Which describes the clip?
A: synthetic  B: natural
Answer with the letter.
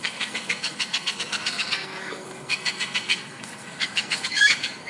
A